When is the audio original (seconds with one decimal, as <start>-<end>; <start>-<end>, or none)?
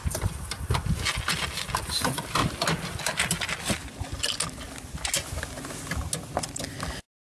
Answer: 0.0-7.4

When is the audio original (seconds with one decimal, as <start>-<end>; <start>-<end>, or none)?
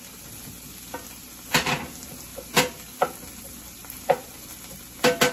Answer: 0.0-5.3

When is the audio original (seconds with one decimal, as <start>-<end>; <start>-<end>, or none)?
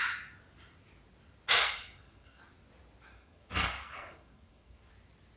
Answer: 0.0-1.6; 2.4-3.1; 4.9-5.4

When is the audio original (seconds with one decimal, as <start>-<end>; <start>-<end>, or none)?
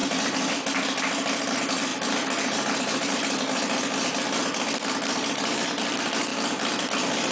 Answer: 0.5-1.9; 3.4-7.3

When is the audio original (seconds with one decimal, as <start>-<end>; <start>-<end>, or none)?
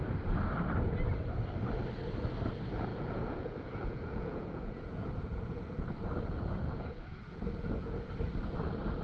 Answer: 0.0-2.9; 8.1-9.0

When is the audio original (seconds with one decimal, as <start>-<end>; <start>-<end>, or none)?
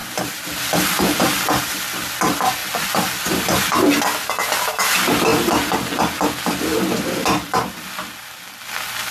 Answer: 1.8-2.6; 3.7-9.1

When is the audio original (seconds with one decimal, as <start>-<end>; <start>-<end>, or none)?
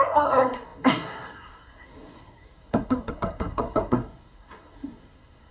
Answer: none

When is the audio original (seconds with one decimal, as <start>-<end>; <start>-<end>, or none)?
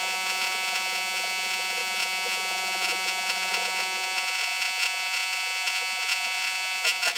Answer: none